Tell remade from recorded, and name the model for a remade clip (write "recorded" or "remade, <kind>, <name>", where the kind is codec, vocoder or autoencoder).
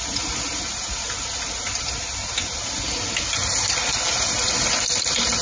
recorded